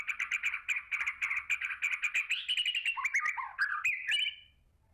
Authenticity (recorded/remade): recorded